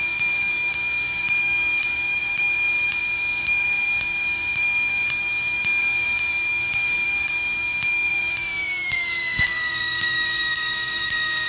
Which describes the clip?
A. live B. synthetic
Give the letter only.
B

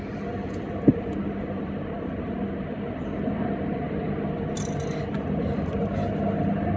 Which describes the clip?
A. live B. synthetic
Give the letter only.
A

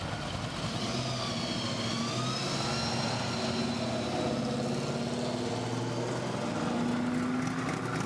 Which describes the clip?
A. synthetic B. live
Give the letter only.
B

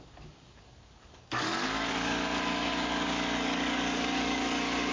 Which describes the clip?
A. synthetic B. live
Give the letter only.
A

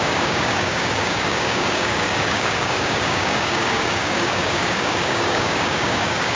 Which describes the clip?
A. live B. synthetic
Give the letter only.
B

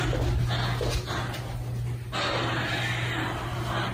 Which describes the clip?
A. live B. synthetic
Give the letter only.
A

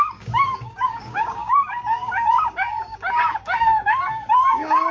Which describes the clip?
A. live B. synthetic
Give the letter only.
B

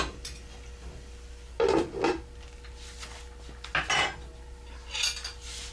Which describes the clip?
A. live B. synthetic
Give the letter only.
A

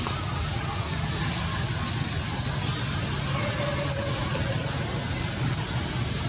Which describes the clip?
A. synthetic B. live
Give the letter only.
B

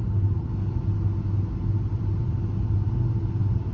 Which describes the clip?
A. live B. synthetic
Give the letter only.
A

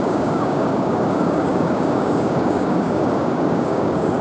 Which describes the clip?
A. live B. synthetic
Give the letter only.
B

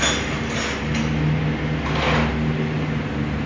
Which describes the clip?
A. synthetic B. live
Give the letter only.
B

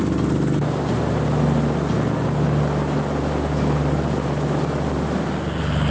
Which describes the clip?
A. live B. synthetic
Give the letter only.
A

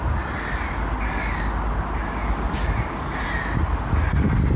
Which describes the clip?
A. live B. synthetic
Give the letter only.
A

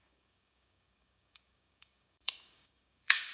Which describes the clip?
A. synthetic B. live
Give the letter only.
A